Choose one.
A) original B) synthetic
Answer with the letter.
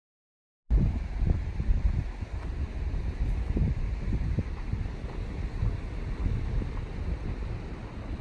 A